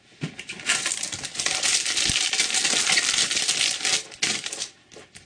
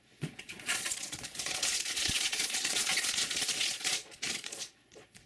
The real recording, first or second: first